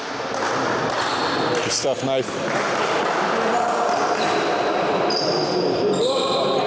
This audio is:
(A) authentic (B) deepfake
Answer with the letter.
A